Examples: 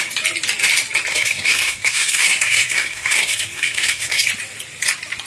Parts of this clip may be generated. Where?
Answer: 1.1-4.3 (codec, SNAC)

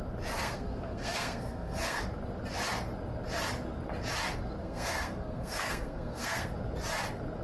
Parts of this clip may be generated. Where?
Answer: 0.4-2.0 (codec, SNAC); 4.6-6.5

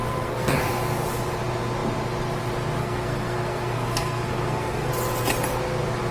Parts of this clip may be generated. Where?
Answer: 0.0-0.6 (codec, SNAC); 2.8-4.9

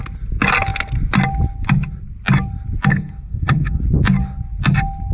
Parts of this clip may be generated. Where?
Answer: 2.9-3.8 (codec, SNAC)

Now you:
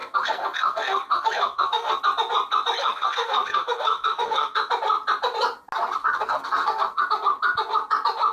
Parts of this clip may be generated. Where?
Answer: 0.0-2.0 (codec, SNAC); 2.8-4.7; 6.0-7.0

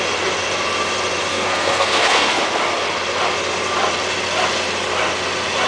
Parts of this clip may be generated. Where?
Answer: 1.3-2.4 (codec, SNAC)